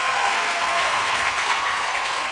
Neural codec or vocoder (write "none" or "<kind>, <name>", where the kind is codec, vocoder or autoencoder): codec, SNAC